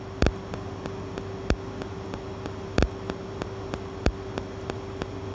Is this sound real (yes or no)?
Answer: yes